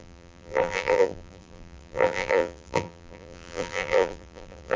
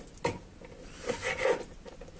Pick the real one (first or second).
second